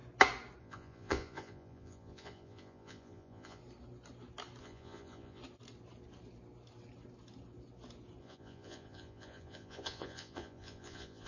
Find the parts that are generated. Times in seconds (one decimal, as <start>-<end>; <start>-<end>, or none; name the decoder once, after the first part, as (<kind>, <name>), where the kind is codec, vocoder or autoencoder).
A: 0.6-3.6 (vocoder, Vocos); 4.6-5.4; 8.2-11.3